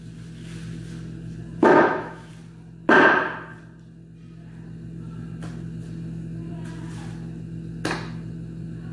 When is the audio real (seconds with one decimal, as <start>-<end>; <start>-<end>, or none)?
0.0-1.6; 2.3-8.9